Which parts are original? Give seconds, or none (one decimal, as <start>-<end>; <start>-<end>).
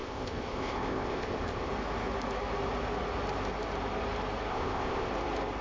1.7-4.5; 5.1-5.6